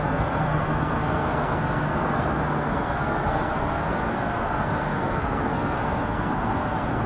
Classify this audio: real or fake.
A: fake